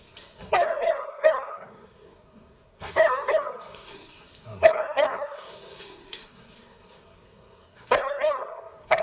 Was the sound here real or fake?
fake